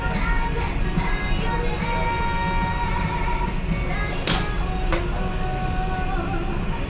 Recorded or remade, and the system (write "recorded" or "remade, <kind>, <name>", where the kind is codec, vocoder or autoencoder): recorded